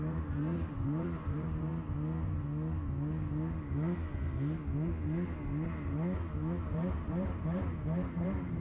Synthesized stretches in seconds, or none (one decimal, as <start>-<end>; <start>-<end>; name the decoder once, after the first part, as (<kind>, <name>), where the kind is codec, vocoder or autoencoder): 0.0-1.7 (vocoder, BigVGAN v2); 6.6-8.6